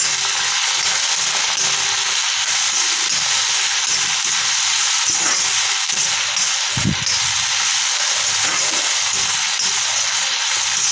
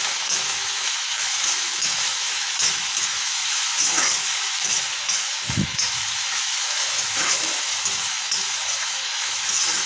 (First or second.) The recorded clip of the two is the first